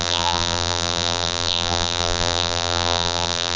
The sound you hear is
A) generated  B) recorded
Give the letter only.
A